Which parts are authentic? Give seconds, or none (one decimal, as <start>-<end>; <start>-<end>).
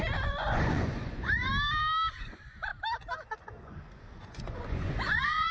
1.5-2.1; 2.7-3.4